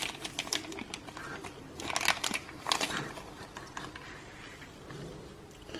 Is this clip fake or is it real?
real